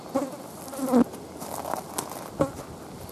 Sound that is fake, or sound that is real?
real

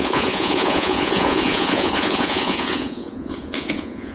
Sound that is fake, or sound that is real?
fake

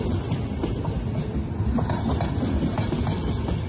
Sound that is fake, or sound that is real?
real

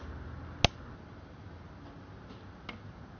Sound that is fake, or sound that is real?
real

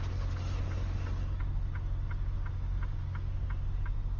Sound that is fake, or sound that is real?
real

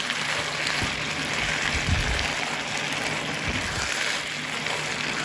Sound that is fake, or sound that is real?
real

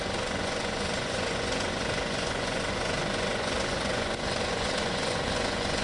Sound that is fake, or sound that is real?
fake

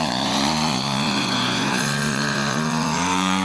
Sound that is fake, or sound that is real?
fake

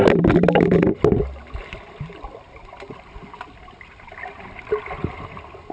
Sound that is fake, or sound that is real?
real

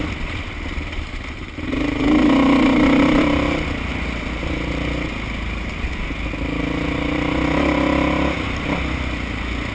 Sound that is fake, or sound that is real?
real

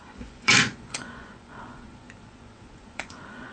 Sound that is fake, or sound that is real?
fake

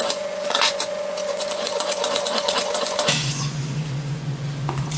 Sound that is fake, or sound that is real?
fake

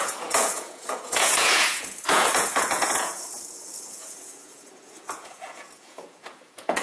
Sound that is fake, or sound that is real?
fake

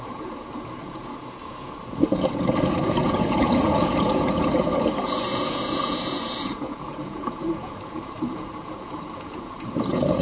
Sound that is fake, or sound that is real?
fake